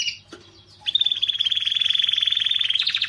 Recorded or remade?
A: recorded